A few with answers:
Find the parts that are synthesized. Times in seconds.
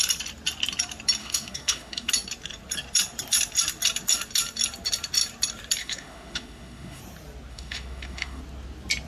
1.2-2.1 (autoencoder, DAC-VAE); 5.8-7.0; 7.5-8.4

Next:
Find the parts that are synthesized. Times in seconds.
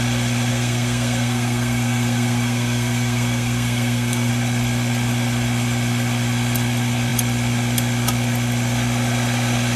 0.5-4.3 (codec, SNAC)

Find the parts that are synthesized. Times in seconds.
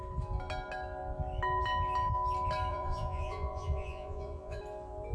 2.7-4.6 (vocoder, Vocos)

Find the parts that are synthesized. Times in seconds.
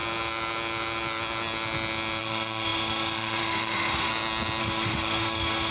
2.2-4.1 (autoencoder, DAC-VAE); 4.6-5.7